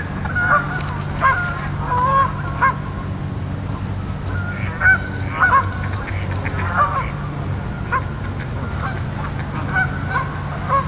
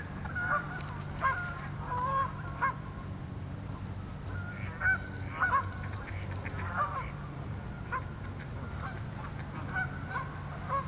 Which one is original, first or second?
first